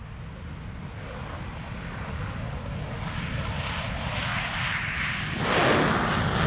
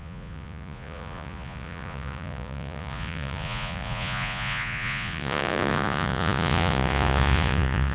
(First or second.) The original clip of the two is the first